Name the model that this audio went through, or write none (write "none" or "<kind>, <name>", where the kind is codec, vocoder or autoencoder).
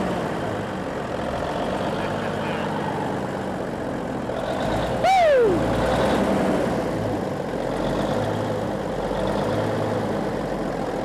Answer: none